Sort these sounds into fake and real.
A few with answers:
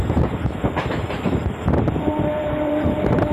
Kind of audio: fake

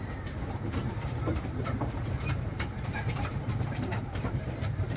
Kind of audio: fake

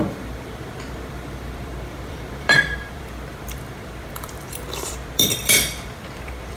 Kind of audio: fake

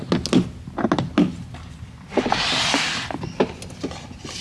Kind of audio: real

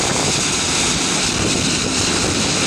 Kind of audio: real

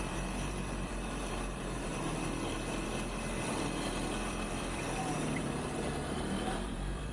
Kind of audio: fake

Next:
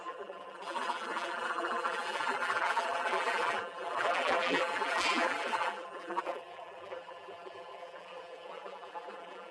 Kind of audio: fake